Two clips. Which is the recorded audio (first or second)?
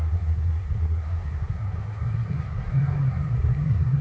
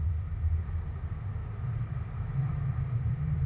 second